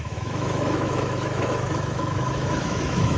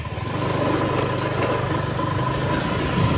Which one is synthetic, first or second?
first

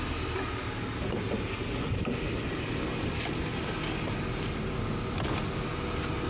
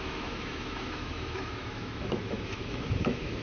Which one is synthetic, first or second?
second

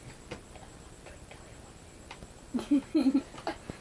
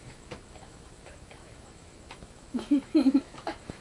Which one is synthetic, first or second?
second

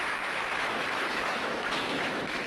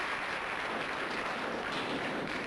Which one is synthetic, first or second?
first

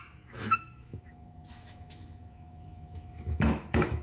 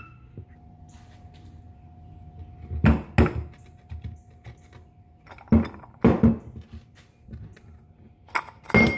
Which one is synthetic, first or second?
first